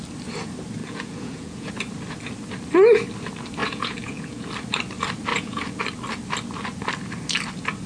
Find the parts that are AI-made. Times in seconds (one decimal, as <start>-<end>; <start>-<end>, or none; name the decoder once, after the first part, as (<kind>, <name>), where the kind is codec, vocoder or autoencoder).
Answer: 0.8-1.7 (vocoder, Vocos); 3.6-4.5; 5.3-5.8